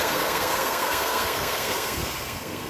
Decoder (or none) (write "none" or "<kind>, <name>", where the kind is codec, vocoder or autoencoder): codec, SNAC